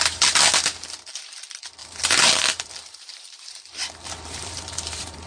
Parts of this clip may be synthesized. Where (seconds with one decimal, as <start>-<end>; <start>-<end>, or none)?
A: 1.8-5.3